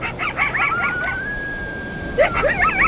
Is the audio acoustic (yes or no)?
yes